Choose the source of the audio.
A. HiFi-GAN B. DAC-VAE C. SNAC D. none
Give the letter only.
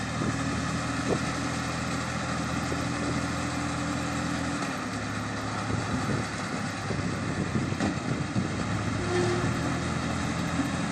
D